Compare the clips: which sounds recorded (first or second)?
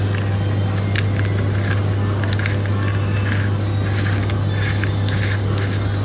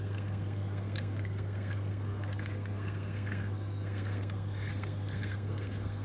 first